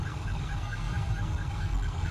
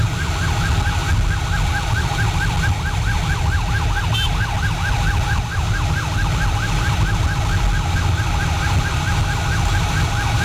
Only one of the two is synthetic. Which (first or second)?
first